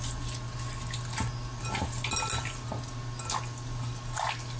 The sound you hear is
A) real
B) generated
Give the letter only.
A